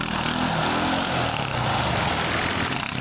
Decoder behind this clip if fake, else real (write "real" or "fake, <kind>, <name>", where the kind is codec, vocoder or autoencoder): real